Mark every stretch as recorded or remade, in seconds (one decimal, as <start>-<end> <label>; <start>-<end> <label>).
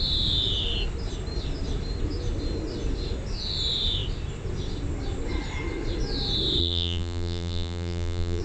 0.0-6.6 recorded; 6.6-8.4 remade